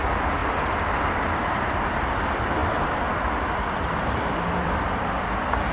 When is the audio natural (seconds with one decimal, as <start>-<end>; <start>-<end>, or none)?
0.0-2.6; 5.1-5.7